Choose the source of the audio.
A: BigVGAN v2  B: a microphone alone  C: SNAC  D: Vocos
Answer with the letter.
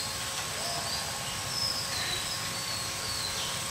B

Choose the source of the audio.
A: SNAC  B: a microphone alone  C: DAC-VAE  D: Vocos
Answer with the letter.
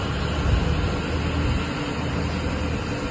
B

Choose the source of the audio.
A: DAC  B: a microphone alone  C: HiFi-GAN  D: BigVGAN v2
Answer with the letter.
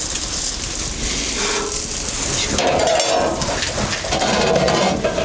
B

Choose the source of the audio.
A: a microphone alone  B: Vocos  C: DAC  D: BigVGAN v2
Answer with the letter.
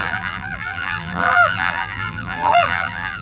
D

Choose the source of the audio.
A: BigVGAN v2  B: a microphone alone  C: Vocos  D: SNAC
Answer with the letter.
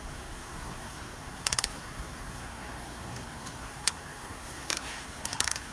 D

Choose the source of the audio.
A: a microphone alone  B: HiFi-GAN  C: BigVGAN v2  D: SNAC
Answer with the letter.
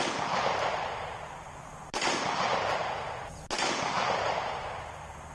A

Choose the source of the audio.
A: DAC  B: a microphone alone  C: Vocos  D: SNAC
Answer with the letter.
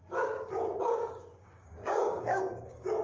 A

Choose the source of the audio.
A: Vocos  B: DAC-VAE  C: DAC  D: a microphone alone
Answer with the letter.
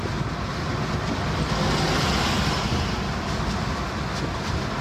D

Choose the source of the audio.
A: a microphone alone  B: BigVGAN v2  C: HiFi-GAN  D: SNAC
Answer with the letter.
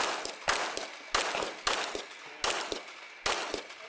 A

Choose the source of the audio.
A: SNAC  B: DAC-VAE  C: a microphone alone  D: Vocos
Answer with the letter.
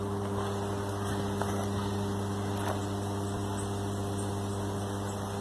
C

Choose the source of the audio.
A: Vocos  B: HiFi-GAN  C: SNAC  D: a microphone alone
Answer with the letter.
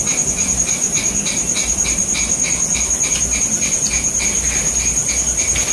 D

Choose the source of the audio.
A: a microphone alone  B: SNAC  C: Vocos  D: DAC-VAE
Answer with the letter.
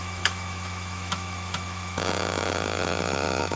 D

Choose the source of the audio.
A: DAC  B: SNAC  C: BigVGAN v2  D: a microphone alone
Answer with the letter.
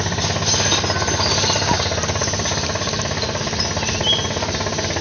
D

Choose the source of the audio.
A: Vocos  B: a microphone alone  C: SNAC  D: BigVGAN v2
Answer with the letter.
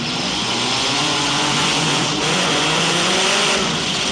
A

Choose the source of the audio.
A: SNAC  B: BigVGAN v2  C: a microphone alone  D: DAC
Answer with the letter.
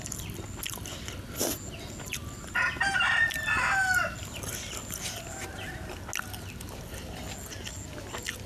C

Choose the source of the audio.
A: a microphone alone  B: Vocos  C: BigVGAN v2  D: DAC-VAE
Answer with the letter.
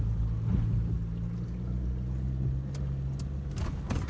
A